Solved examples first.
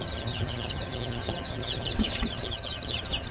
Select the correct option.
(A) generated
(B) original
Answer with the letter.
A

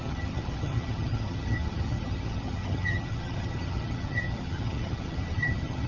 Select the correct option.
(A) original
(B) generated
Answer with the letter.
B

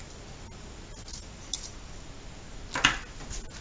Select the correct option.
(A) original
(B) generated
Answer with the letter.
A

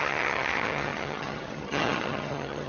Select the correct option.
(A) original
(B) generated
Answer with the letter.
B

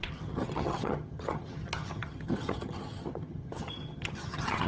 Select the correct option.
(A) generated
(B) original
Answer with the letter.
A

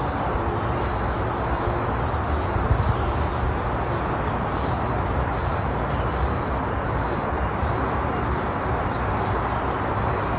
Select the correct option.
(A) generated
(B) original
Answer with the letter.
B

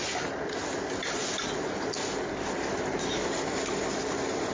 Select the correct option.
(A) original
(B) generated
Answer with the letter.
A